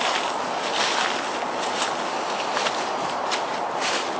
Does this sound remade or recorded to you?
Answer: remade